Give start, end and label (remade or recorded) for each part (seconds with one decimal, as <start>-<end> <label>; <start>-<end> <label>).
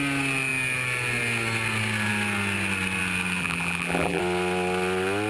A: 0.0-3.4 recorded; 3.4-4.2 remade; 4.2-5.3 recorded